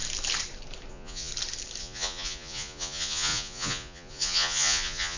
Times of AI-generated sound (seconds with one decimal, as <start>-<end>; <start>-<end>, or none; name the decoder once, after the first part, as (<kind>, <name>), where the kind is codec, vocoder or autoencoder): 0.9-1.3 (vocoder, Vocos); 1.8-5.2